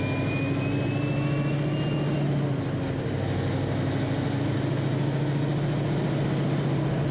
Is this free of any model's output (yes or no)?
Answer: yes